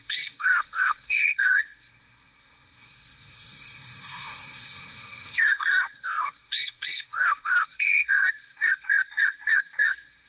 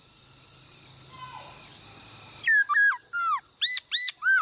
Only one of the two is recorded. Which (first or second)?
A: second